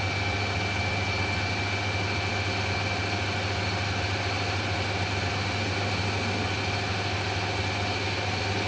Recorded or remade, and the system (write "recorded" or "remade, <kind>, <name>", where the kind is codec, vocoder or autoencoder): recorded